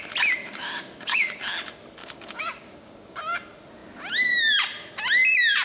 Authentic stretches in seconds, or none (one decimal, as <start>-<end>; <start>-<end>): 0.0-0.4; 1.4-2.0; 3.2-5.6